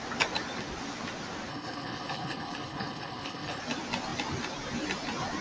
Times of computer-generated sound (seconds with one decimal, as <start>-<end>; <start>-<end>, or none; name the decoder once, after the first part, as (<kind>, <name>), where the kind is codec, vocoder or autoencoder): 1.5-3.6 (codec, HILCodec)